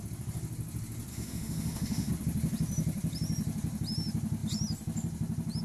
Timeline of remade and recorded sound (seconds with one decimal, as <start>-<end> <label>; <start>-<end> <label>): 0.0-1.1 recorded; 1.1-2.1 remade; 2.1-5.6 recorded